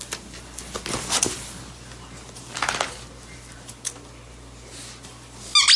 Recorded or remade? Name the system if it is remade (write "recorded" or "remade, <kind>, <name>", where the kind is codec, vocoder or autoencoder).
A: recorded